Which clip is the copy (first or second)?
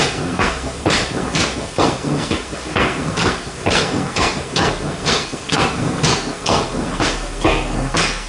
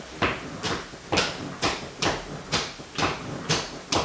first